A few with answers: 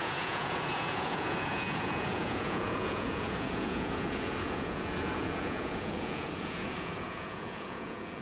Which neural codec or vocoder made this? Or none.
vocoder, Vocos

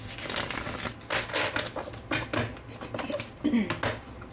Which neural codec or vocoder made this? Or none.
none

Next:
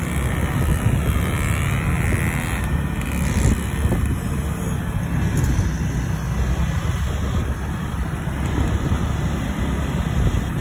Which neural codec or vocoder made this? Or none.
none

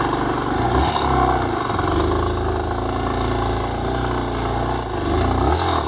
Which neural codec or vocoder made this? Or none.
none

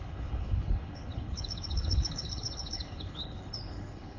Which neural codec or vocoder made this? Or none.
codec, HILCodec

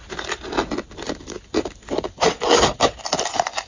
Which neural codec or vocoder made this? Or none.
none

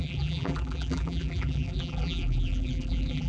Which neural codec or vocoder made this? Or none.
vocoder, BigVGAN v2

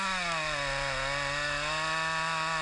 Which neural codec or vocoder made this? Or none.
none